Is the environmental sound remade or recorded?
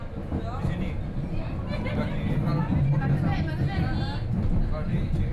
recorded